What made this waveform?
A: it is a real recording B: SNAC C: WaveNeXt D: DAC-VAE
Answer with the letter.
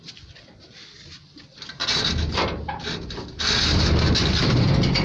A